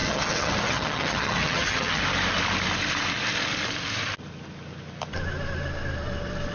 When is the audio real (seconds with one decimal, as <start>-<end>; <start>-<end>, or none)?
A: 2.0-6.5